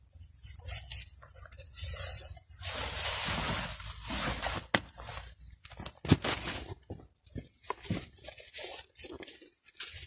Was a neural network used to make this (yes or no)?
no